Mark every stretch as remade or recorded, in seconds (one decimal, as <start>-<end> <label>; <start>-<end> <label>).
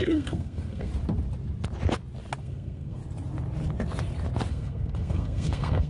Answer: 0.0-0.9 remade; 0.9-2.4 recorded; 2.4-3.0 remade; 3.0-4.5 recorded; 4.5-5.9 remade